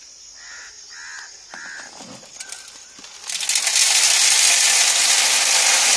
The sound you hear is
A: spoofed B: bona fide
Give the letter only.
B